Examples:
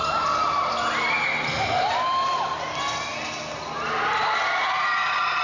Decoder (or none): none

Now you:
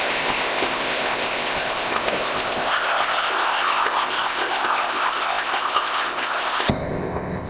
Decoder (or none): codec, ZipCodec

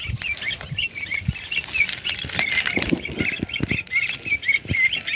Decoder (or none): none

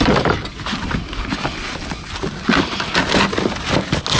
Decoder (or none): none